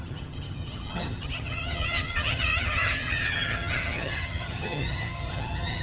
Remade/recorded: remade